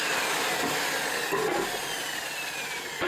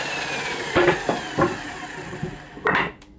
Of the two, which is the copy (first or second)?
second